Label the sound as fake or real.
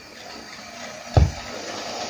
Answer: fake